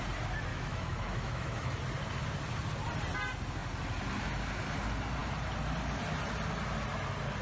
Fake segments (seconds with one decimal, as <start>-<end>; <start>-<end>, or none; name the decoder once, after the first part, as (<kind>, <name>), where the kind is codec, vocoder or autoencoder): 0.5-1.8 (autoencoder, DAC-VAE)